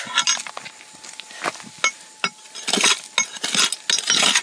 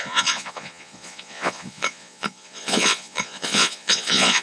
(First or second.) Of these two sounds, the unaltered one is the first